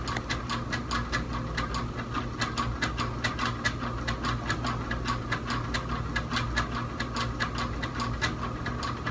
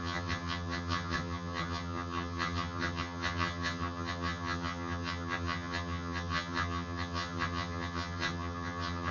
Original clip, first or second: first